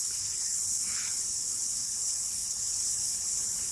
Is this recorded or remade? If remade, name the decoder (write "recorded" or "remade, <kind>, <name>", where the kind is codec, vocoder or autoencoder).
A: remade, codec, HILCodec